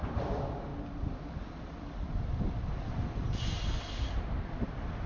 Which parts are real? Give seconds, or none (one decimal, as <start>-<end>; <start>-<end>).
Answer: 0.0-5.1